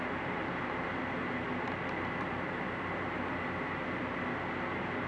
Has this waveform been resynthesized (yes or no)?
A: no